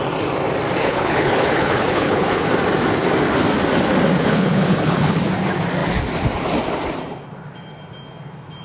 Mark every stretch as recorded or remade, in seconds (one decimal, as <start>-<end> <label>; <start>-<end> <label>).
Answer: 0.0-0.8 recorded; 0.8-2.5 remade; 2.5-4.2 recorded; 4.2-5.2 remade; 5.2-8.6 recorded